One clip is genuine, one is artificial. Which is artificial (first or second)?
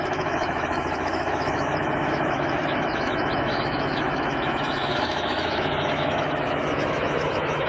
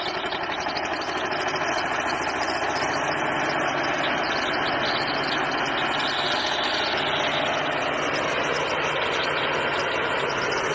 first